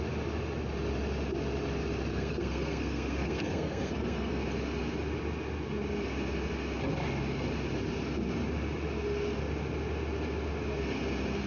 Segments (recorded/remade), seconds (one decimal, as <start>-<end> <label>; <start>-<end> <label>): 0.0-2.1 recorded; 2.1-4.4 remade; 4.4-11.5 recorded